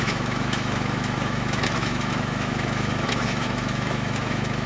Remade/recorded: remade